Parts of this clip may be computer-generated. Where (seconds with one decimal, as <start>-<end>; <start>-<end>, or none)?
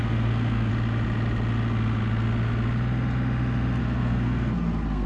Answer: 0.0-0.7; 3.8-5.1